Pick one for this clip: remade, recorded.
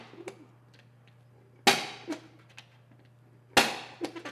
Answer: recorded